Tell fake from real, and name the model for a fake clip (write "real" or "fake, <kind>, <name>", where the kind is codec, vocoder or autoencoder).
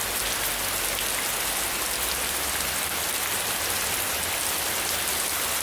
real